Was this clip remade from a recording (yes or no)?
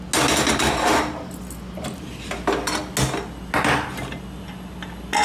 no